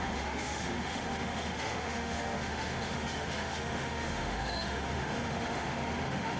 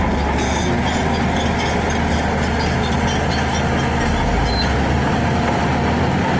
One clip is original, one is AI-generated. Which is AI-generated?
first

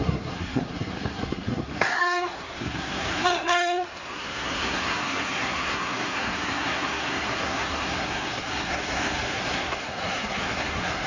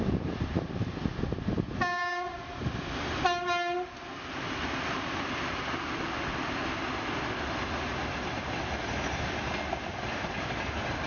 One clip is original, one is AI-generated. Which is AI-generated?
first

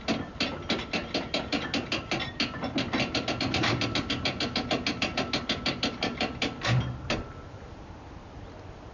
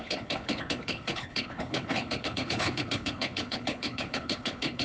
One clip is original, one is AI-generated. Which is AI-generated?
second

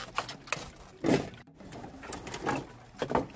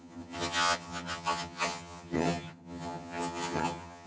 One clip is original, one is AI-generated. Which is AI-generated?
second